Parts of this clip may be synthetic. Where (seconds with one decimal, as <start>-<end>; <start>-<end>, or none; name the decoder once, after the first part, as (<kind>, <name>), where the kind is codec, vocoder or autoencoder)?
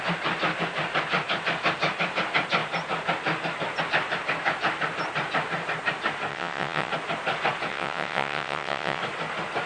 6.3-6.9 (vocoder, WaveNeXt); 7.7-9.0